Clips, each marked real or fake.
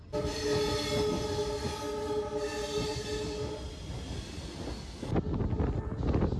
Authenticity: real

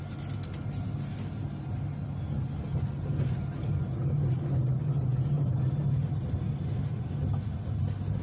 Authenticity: real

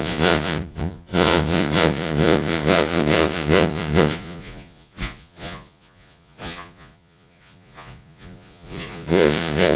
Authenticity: fake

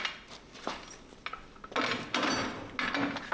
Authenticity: real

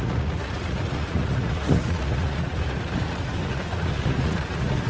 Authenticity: fake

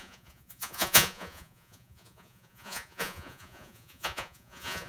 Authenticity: fake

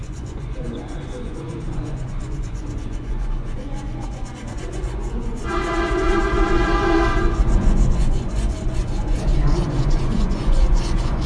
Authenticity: fake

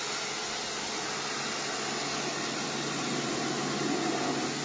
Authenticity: real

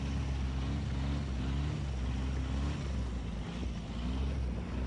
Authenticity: real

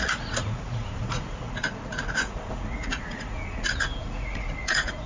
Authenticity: fake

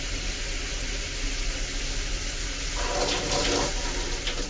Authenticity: real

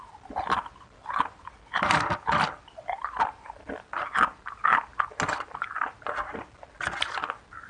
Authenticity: real